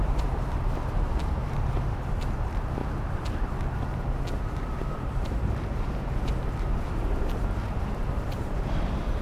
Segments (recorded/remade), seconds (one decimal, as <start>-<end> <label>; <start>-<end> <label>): 0.0-2.8 remade; 2.8-4.4 recorded; 4.4-9.2 remade